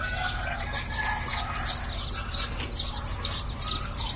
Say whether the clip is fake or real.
real